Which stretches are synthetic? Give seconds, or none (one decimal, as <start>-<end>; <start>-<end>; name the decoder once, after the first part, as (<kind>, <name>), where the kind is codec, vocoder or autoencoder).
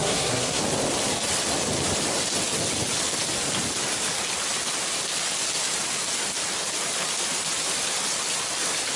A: 0.0-0.6 (codec, SNAC)